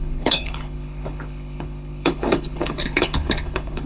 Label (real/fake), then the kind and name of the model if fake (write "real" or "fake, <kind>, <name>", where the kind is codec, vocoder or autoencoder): fake, codec, HILCodec